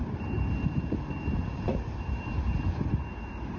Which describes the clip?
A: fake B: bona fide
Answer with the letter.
A